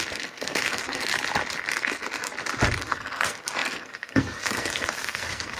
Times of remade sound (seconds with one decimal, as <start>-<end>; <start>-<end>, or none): 0.0-1.1; 1.7-2.3; 2.8-5.6